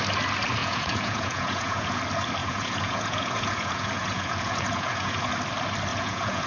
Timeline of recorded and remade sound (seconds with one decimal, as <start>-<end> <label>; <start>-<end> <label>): 0.0-0.6 recorded; 0.6-2.0 remade; 2.0-2.4 recorded; 2.4-5.3 remade; 5.3-5.9 recorded; 5.9-6.5 remade